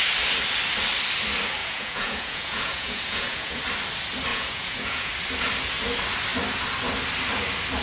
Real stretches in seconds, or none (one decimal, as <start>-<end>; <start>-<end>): 0.0-1.6; 3.6-4.3; 5.1-7.8